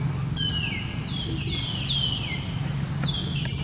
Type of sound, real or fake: real